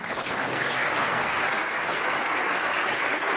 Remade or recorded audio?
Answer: remade